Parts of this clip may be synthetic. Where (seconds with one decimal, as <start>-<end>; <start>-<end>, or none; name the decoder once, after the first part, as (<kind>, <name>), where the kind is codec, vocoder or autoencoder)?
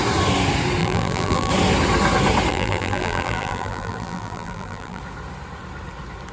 0.8-1.5 (vocoder, BigVGAN v2); 2.5-5.0